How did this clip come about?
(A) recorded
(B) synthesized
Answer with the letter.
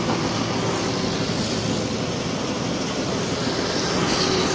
A